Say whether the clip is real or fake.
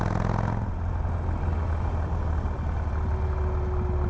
real